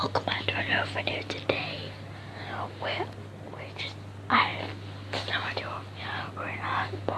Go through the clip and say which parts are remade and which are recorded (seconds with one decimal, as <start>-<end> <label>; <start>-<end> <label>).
0.0-7.2 recorded